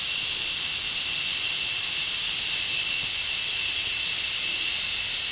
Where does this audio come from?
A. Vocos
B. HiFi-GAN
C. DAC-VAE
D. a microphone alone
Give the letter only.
D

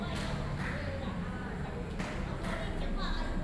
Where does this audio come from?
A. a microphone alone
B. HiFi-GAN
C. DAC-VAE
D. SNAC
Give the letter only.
A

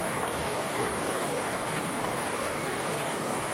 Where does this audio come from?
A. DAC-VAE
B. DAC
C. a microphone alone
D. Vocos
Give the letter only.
B